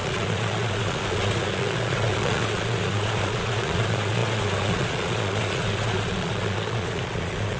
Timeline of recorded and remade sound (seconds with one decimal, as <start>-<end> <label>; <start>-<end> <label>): 0.0-7.6 remade